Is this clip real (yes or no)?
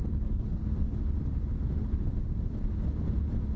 yes